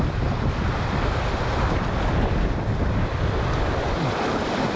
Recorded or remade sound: remade